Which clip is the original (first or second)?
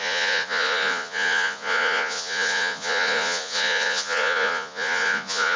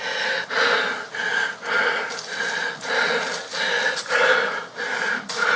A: second